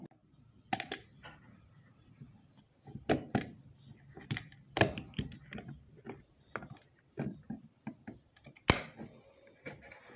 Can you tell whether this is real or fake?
real